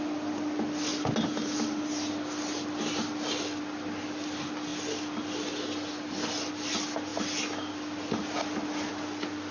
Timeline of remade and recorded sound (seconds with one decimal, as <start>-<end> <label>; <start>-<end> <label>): 0.0-4.7 recorded; 4.7-5.3 remade; 5.3-9.5 recorded